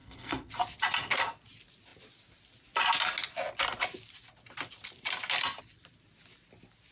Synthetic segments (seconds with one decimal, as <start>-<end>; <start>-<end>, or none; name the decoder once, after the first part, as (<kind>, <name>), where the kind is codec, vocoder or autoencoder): 0.0-0.5 (codec, SNAC)